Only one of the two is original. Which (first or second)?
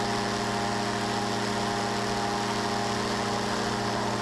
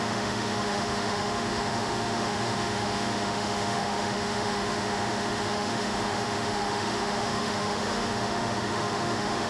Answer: first